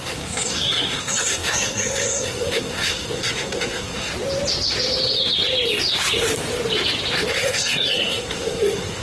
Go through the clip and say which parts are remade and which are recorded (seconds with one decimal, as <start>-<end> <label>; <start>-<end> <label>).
0.0-4.1 remade; 4.1-7.3 recorded; 7.3-9.0 remade